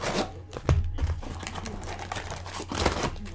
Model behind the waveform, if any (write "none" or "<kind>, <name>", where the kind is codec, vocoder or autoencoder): vocoder, BigVGAN v2